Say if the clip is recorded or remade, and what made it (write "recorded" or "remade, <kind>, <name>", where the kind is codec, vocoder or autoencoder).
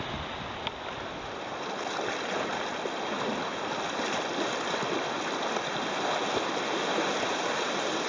recorded